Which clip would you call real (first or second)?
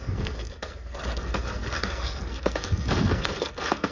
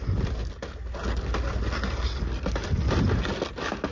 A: second